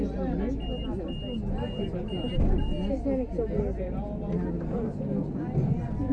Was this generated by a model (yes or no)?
no